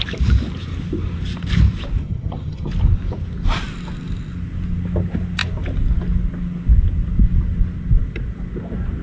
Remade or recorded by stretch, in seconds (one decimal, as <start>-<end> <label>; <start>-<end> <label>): 0.0-2.0 recorded; 2.0-2.7 remade; 2.7-9.0 recorded